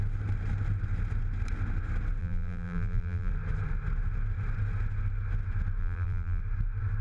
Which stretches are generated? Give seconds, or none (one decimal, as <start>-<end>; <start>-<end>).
2.2-3.3; 5.8-6.4